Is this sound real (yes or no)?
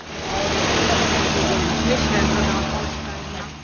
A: yes